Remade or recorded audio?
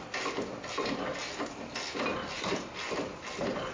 recorded